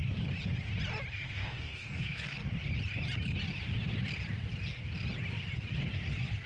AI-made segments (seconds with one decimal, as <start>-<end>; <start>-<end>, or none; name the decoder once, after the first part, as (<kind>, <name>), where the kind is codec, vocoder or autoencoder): 1.1-2.4 (codec, DAC)